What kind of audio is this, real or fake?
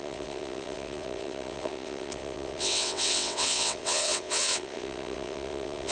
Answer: fake